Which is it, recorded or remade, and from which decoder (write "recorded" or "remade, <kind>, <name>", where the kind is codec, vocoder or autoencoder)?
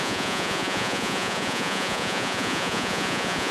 remade, vocoder, Vocos